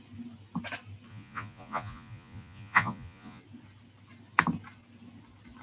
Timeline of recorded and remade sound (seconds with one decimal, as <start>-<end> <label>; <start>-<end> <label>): 0.0-1.1 recorded; 1.1-3.4 remade; 3.4-5.6 recorded